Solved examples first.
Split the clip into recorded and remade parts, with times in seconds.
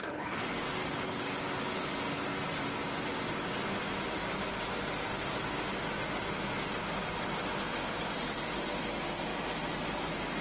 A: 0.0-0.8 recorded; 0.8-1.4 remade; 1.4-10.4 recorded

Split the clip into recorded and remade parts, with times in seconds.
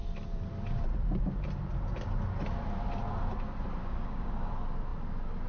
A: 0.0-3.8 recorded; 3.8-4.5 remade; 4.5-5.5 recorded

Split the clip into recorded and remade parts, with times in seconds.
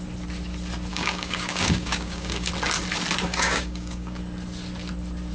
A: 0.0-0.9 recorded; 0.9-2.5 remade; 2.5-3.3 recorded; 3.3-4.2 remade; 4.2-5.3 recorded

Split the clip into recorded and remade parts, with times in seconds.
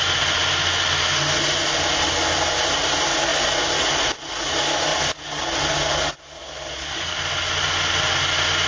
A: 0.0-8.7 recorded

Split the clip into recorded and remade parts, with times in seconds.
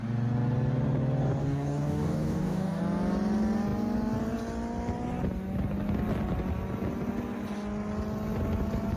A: 0.0-1.4 recorded; 1.4-2.8 remade; 2.8-9.0 recorded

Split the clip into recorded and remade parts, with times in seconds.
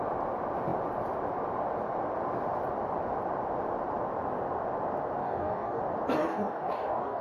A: 0.0-5.2 recorded; 5.2-5.8 remade; 5.8-6.3 recorded; 6.3-7.2 remade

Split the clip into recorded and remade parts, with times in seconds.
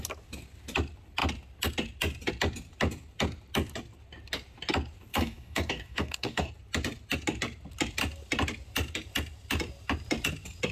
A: 0.0-5.1 recorded; 5.1-6.5 remade; 6.5-10.7 recorded